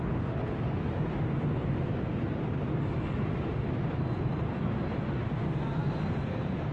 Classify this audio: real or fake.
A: real